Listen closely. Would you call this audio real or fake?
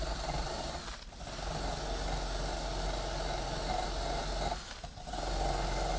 real